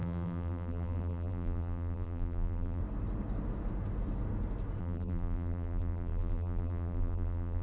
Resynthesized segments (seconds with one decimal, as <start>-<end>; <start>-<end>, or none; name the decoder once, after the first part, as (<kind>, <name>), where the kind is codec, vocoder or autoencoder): 0.0-2.8 (vocoder, BigVGAN v2); 4.8-7.6